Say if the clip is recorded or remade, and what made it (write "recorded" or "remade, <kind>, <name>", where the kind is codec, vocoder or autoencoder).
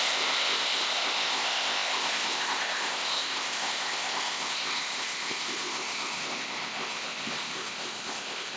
remade, codec, ZipCodec